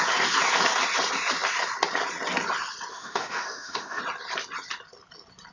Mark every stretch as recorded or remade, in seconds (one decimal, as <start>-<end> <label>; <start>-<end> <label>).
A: 0.0-2.9 recorded; 2.9-4.0 remade; 4.0-5.5 recorded